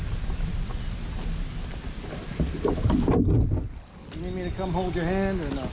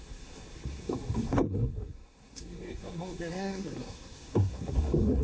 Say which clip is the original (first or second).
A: first